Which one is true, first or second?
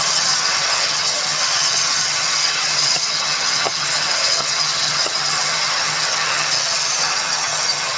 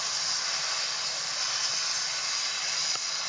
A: second